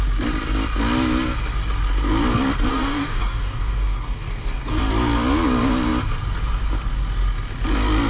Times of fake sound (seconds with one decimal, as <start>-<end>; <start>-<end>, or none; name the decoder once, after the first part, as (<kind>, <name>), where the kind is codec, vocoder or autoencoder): 2.7-4.8 (codec, DAC)

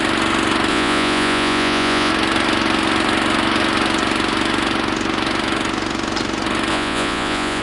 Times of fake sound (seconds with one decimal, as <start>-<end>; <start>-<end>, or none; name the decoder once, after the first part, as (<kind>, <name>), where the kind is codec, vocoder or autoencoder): 0.7-2.1 (vocoder, Vocos); 6.7-7.6

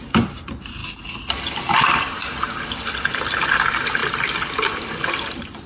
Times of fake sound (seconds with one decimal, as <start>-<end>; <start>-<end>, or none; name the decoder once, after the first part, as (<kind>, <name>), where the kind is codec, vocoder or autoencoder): 0.0-4.0 (vocoder, BigVGAN v2); 4.5-5.7

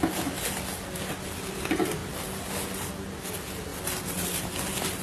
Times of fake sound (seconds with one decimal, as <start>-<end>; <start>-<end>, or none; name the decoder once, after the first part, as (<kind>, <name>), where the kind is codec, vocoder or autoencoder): none

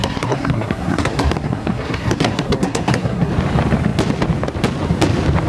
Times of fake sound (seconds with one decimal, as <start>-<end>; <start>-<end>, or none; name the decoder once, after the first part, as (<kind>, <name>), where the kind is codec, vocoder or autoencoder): 0.0-3.3 (codec, SNAC)

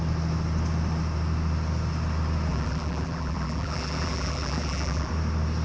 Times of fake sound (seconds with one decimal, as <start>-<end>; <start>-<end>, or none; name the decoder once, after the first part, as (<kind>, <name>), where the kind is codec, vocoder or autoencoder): 2.5-5.1 (vocoder, BigVGAN v2)

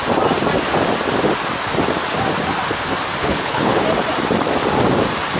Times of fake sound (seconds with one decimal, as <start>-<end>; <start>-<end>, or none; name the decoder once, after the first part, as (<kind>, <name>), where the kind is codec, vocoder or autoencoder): 3.2-3.8 (codec, HILCodec)

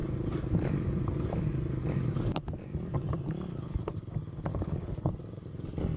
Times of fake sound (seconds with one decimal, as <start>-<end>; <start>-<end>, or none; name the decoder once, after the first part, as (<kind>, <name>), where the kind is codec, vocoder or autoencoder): 3.5-4.0 (codec, HILCodec); 4.5-5.1